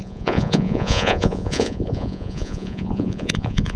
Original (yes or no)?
no